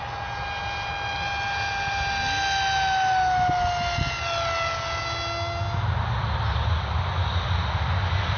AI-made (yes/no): no